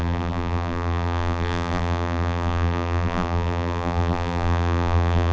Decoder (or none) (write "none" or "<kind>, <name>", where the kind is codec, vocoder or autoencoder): vocoder, BigVGAN v2